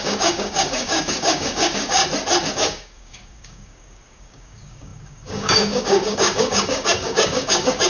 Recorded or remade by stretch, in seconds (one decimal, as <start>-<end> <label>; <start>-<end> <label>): 0.0-2.0 remade; 2.0-2.5 recorded; 2.5-7.9 remade